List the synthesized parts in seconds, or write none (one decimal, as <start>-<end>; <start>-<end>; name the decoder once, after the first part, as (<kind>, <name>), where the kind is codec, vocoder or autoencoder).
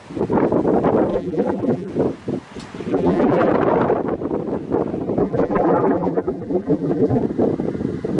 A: 1.1-1.9 (vocoder, BigVGAN v2); 2.9-3.5; 5.2-7.2